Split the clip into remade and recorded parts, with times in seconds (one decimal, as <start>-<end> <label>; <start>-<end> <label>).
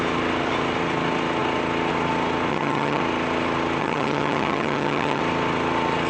0.0-2.5 recorded; 2.5-3.0 remade; 3.0-3.8 recorded; 3.8-5.2 remade; 5.2-6.1 recorded